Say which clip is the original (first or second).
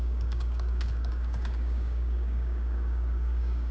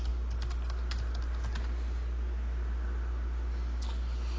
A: second